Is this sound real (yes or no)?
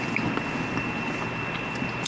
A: yes